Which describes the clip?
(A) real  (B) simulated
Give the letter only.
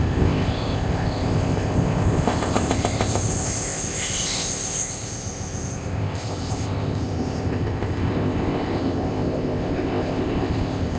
B